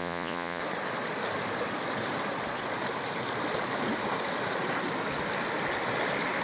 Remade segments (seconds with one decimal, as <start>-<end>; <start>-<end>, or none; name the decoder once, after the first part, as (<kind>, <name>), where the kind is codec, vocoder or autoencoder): 0.0-0.6 (vocoder, Vocos)